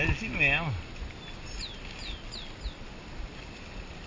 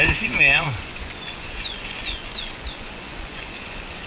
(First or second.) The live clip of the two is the first